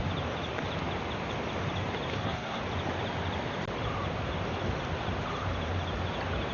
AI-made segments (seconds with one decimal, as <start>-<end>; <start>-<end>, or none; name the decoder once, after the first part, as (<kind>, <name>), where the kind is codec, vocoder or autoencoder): 2.1-2.6 (codec, SNAC)